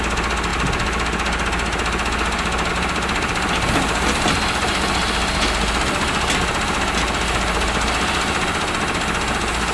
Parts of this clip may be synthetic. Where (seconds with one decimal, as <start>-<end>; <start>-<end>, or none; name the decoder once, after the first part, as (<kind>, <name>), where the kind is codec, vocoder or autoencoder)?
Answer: none